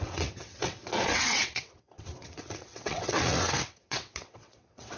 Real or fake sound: fake